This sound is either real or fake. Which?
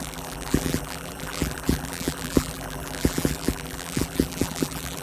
fake